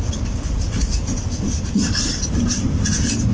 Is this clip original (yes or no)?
yes